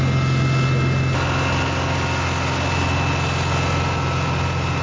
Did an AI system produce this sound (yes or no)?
no